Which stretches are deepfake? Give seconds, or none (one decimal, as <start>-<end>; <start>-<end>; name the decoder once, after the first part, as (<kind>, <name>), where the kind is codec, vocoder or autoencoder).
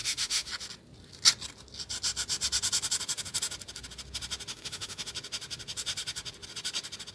0.0-0.5 (autoencoder, DAC-VAE); 4.5-5.1